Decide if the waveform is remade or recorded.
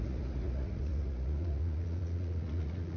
remade